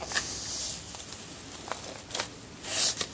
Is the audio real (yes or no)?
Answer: yes